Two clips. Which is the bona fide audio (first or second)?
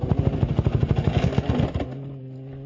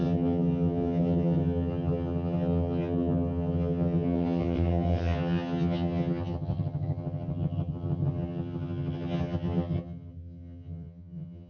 first